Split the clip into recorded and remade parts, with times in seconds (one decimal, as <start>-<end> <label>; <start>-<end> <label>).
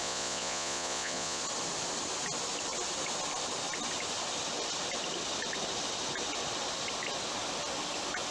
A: 0.0-1.4 remade; 1.4-8.3 recorded